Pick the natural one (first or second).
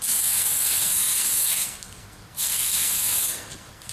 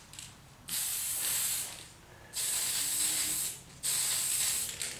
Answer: second